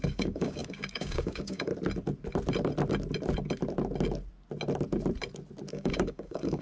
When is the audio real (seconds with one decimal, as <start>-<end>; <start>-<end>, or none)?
1.7-5.7

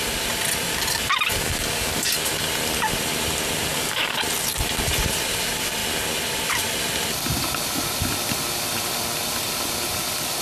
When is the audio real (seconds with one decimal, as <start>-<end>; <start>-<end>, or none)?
0.0-1.3; 2.1-3.7; 4.2-10.4

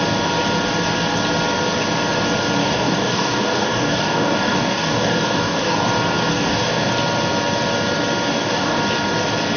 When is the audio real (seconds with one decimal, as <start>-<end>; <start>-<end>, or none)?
0.0-2.6; 5.8-6.3; 6.9-8.3; 8.8-9.6

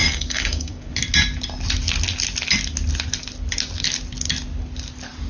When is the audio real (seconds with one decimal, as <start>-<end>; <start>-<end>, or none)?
0.9-5.3

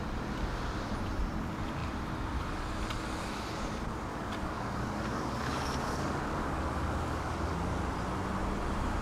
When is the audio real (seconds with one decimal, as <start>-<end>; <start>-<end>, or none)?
0.0-4.1; 7.8-9.0

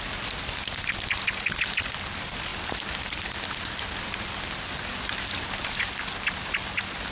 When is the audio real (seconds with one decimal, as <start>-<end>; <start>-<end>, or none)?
0.0-7.1

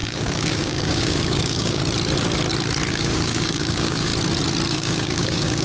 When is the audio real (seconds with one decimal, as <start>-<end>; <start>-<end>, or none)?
1.8-2.9; 4.1-4.7